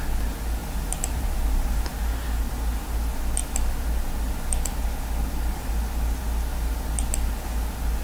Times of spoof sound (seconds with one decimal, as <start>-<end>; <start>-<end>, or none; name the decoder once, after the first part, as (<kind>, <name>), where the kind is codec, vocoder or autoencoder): 0.6-1.9 (vocoder, BigVGAN v2)